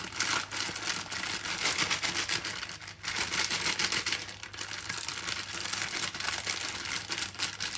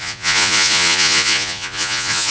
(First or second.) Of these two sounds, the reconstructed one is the second